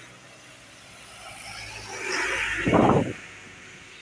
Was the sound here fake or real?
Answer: real